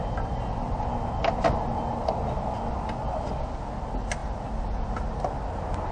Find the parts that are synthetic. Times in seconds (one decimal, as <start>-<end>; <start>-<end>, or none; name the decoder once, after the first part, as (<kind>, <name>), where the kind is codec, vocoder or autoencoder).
none